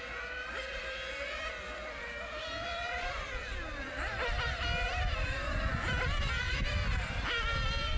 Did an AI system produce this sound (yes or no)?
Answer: yes